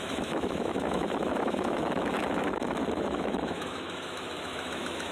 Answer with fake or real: fake